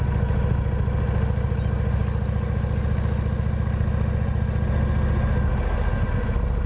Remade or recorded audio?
recorded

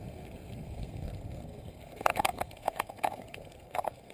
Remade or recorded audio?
remade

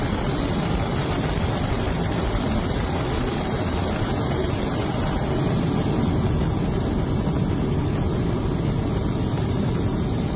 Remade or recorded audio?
recorded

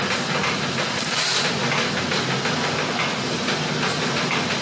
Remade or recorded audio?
recorded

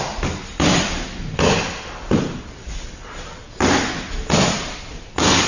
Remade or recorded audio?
recorded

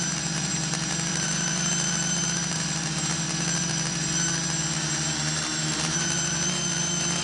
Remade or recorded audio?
remade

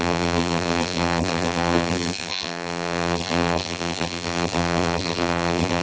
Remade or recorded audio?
remade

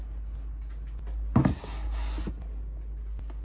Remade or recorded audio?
recorded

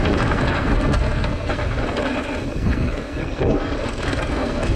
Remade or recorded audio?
remade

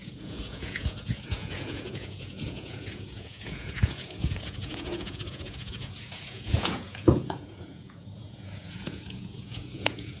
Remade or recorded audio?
remade